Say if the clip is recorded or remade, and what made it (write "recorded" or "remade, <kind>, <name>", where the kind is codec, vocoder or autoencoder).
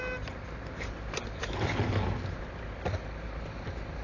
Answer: recorded